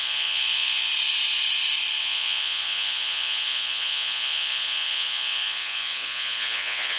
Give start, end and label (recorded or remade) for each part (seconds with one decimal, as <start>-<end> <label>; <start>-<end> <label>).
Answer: 0.0-0.9 remade; 0.9-2.0 recorded; 2.0-7.0 remade